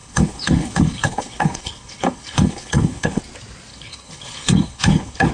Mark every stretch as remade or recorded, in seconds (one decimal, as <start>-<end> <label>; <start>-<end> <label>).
0.0-3.2 remade; 3.2-3.7 recorded; 3.7-5.3 remade